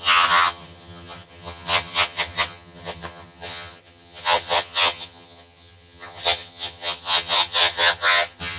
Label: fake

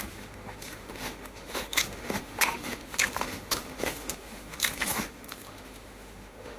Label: fake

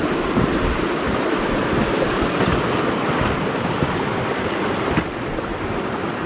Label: real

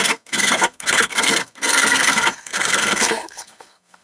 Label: fake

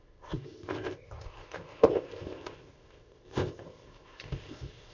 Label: fake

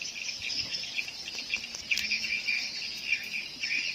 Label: real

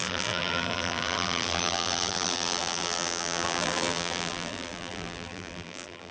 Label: fake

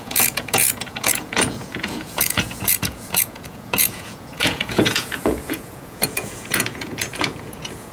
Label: fake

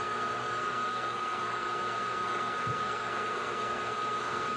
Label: fake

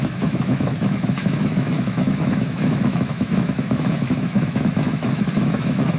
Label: fake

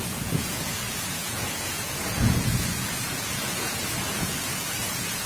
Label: fake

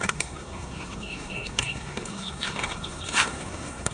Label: fake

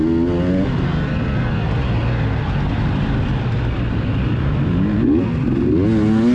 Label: real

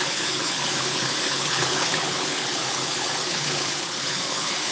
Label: fake